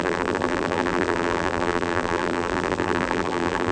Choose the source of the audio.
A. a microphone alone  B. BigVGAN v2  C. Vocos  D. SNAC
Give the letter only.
B